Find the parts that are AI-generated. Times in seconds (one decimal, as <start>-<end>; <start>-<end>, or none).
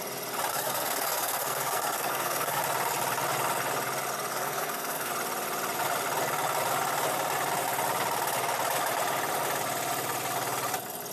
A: 0.5-2.6; 4.3-5.1